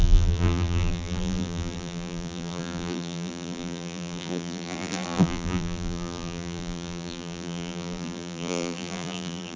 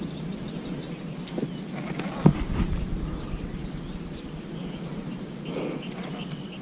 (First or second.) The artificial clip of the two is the first